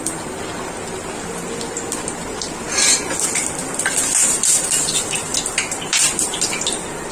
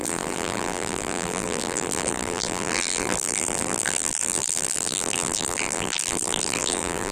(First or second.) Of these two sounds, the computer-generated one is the second